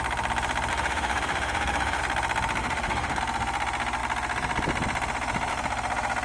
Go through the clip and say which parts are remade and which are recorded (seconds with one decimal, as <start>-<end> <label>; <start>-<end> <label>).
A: 0.0-0.7 recorded; 0.7-2.0 remade; 2.0-2.6 recorded; 2.6-3.2 remade; 3.2-6.2 recorded